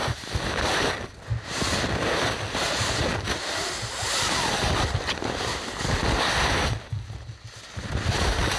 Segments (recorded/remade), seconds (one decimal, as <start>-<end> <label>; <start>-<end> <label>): 0.0-8.6 recorded

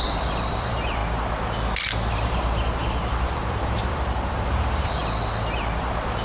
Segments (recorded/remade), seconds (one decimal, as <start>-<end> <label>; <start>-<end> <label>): 0.0-1.0 remade; 1.0-2.1 recorded; 2.1-5.0 remade; 5.0-5.8 recorded; 5.8-6.2 remade

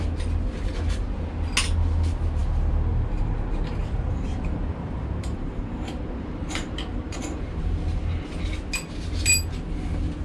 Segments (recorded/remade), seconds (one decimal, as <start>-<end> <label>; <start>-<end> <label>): 0.0-3.8 recorded; 3.8-8.4 remade; 8.4-10.2 recorded

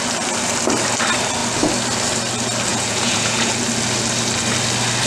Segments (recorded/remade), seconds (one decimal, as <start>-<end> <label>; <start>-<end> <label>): 0.0-2.7 recorded; 2.7-3.5 remade; 3.5-5.1 recorded

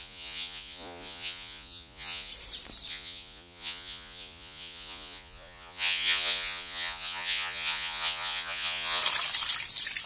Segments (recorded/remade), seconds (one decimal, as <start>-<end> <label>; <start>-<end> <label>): 0.0-2.3 remade; 2.3-2.9 recorded; 2.9-9.0 remade; 9.0-10.1 recorded

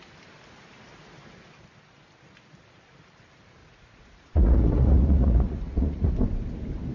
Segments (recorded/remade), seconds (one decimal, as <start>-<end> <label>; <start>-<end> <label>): 0.0-3.6 recorded; 3.6-6.1 remade; 6.1-6.9 recorded

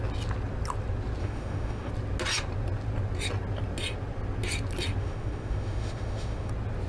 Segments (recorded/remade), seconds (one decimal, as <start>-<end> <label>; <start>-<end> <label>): 0.0-1.2 recorded; 1.2-1.9 remade; 1.9-5.0 recorded; 5.0-6.5 remade; 6.5-6.9 recorded